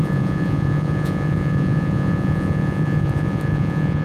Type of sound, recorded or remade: remade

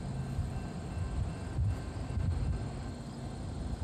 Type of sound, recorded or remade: recorded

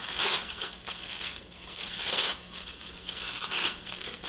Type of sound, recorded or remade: remade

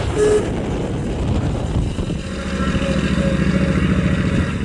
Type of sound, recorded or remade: recorded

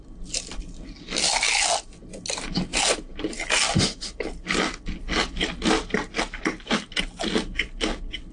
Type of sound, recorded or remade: recorded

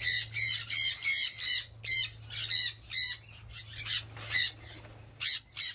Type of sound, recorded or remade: recorded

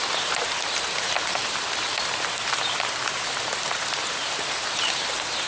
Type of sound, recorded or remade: remade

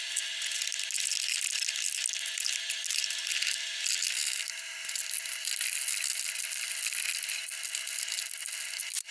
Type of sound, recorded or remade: recorded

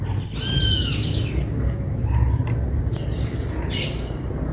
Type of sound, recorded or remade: recorded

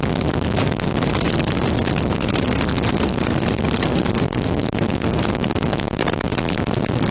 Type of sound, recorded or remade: remade